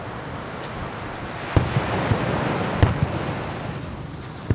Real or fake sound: real